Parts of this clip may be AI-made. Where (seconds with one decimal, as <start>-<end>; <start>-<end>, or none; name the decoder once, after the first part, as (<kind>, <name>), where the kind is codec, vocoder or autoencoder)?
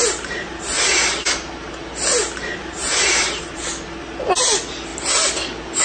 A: 0.0-0.6 (vocoder, BigVGAN v2); 2.6-3.6